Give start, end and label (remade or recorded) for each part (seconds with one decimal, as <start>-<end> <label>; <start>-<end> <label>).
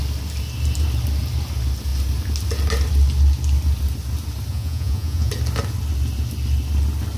0.0-4.5 recorded; 4.5-5.3 remade; 5.3-7.2 recorded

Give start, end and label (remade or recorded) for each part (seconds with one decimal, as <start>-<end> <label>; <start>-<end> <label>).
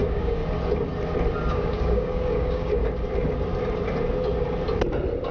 0.0-0.4 remade; 0.4-1.5 recorded; 1.5-2.8 remade; 2.8-5.3 recorded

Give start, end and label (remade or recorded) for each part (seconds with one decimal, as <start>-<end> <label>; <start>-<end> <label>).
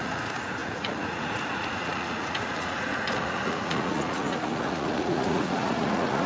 0.0-6.3 remade